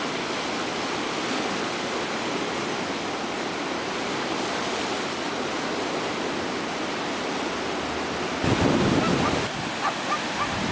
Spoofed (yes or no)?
no